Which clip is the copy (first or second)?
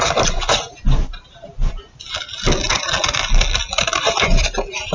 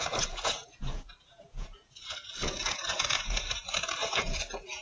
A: second